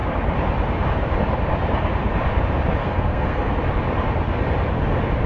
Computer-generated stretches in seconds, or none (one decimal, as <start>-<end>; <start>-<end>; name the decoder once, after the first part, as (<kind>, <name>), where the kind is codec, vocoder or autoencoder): 2.8-3.5 (codec, SNAC)